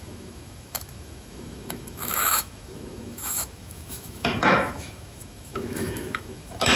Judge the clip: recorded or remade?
remade